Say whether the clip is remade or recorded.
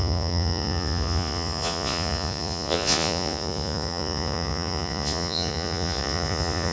remade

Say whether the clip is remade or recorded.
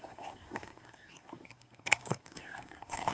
remade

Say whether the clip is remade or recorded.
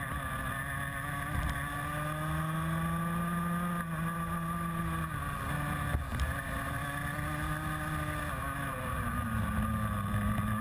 recorded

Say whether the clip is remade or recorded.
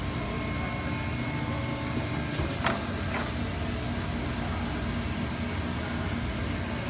recorded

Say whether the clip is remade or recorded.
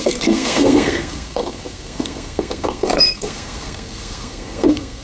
remade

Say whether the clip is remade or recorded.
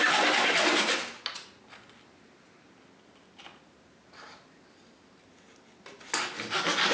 recorded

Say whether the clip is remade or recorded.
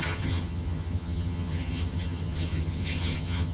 remade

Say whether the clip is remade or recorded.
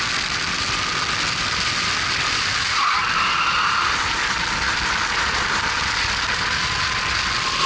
recorded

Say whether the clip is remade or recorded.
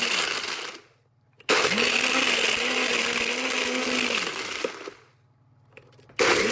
recorded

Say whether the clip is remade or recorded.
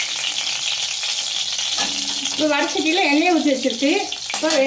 recorded